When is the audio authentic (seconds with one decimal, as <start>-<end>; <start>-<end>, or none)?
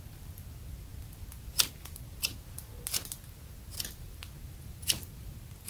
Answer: 0.0-5.7